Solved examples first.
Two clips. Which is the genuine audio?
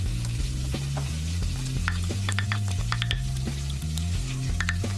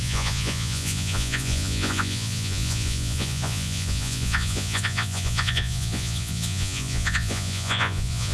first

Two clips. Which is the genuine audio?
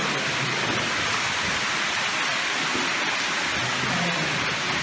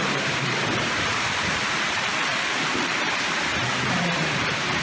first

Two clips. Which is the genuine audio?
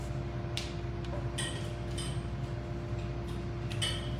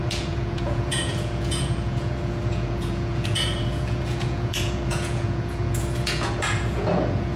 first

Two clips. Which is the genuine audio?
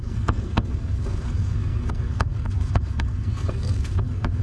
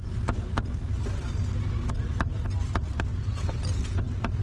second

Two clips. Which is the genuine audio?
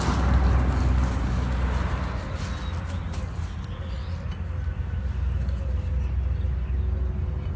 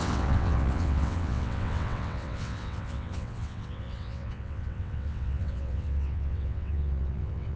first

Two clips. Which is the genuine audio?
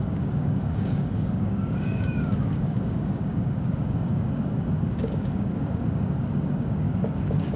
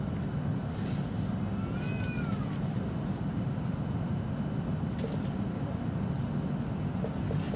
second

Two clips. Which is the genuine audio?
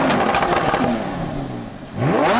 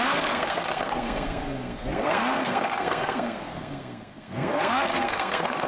first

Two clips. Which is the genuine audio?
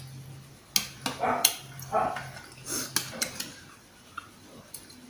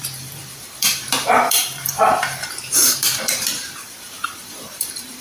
first